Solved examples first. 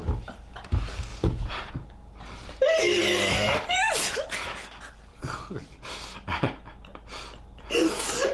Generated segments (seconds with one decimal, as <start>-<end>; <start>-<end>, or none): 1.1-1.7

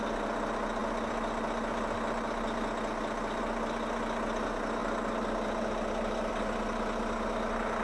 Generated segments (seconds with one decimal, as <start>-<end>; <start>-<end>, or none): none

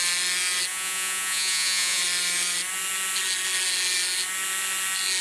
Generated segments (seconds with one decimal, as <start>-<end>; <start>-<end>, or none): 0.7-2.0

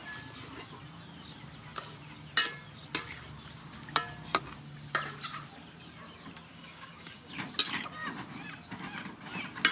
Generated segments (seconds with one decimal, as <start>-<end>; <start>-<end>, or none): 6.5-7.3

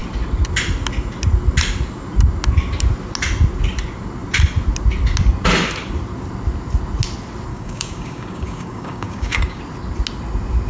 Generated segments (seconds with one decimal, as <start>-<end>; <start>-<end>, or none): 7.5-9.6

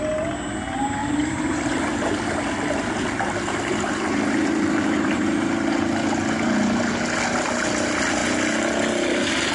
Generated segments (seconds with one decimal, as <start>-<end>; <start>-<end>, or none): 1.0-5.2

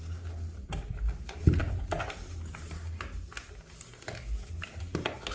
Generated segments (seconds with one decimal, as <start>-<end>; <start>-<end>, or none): none